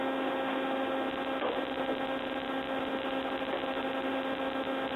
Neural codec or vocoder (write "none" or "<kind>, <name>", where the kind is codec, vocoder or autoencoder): none